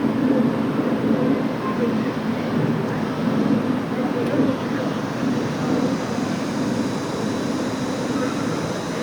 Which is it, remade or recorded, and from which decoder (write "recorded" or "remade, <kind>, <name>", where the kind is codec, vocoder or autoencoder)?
recorded